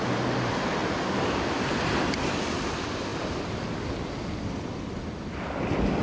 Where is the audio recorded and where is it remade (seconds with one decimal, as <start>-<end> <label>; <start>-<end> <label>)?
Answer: 0.0-6.0 recorded